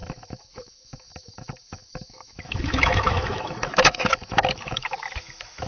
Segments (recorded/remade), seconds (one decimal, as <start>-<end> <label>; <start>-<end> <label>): 0.0-5.7 remade